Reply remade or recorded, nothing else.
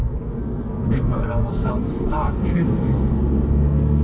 remade